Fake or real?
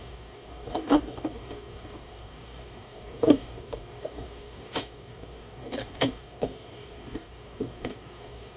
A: fake